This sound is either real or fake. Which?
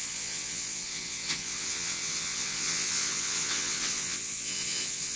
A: fake